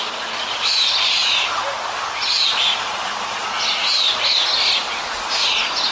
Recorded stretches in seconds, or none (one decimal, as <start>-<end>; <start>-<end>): 0.0-5.9